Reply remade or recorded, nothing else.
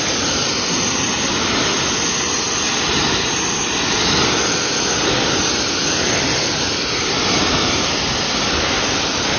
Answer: recorded